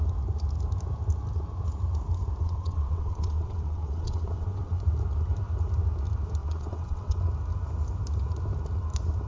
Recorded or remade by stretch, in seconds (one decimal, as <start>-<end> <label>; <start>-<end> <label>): 0.0-2.4 recorded; 2.4-4.7 remade; 4.7-6.4 recorded; 6.4-7.2 remade; 7.2-9.3 recorded